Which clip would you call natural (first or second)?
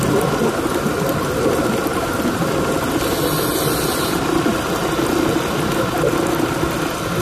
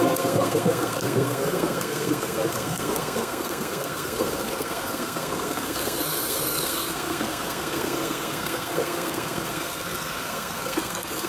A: first